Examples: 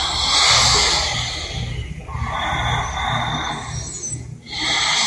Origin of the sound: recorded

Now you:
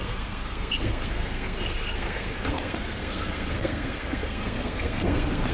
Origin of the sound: remade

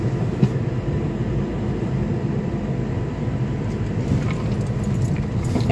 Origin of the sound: recorded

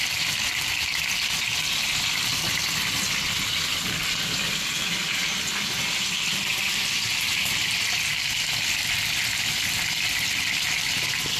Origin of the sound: recorded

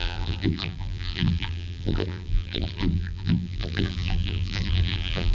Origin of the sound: remade